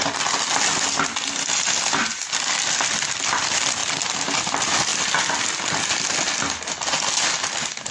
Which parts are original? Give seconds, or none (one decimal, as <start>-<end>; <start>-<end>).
0.0-7.9